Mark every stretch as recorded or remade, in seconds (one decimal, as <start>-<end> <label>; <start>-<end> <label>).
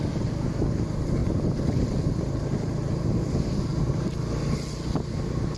0.0-1.2 recorded; 1.2-2.1 remade; 2.1-5.6 recorded